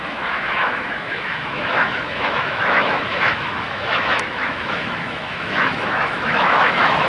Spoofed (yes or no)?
yes